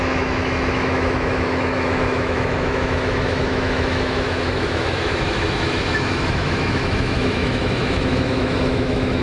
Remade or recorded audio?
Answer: remade